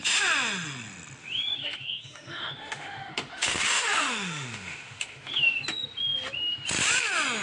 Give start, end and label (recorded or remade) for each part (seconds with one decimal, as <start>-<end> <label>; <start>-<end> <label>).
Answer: 0.0-1.2 recorded; 1.2-5.6 remade; 5.6-7.4 recorded